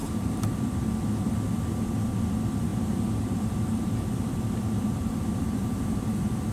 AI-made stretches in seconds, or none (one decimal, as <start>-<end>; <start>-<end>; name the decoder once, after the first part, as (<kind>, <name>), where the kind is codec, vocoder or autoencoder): 0.0-0.5 (vocoder, BigVGAN v2); 2.7-6.0

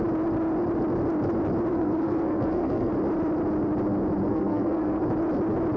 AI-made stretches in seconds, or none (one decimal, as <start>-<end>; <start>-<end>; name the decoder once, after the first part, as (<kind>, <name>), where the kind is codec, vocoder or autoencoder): 1.7-2.9 (codec, SNAC); 4.3-5.0

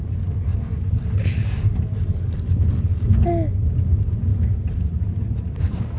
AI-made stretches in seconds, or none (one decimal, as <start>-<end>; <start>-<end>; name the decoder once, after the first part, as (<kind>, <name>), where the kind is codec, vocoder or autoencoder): 0.0-0.5 (vocoder, BigVGAN v2); 1.2-2.9; 3.9-4.3; 5.6-6.0

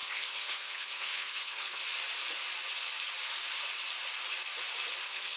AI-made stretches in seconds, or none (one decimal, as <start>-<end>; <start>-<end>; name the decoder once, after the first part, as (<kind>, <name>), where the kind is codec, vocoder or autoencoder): 0.0-1.8 (codec, HILCodec); 5.0-5.4

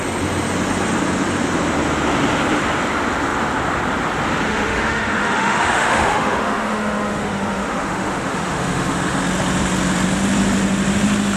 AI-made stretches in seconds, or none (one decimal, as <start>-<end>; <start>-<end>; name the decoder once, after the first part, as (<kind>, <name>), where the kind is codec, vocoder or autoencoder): 4.5-9.2 (autoencoder, DAC-VAE)